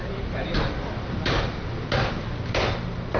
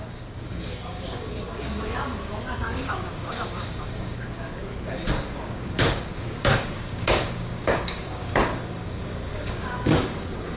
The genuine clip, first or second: first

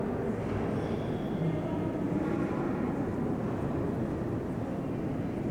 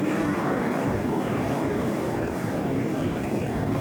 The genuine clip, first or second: first